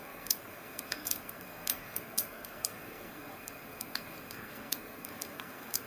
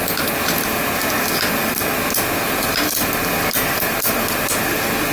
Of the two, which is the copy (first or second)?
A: first